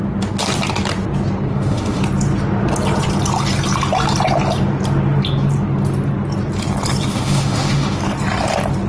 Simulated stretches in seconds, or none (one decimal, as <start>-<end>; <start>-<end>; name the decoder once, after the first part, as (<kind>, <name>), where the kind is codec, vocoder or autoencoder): 1.5-2.0 (autoencoder, DAC-VAE); 7.1-8.0